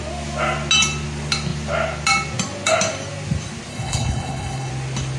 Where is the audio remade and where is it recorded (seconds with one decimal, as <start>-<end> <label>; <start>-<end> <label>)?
0.0-3.7 recorded; 3.7-4.7 remade; 4.7-5.2 recorded